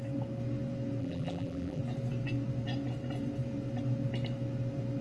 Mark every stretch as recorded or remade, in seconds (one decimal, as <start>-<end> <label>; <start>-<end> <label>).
0.0-1.0 recorded; 1.0-1.8 remade; 1.8-5.0 recorded